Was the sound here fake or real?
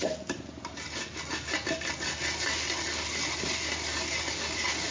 real